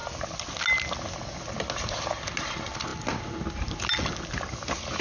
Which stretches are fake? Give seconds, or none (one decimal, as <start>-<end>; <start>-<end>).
none